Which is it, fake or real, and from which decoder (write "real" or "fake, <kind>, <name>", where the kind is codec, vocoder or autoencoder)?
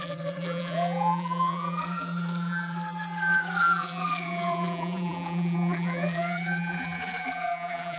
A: fake, vocoder, BigVGAN v2